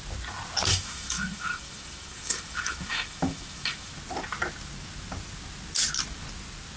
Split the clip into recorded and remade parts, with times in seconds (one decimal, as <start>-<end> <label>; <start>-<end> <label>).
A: 0.0-0.7 recorded; 0.7-3.9 remade; 3.9-6.8 recorded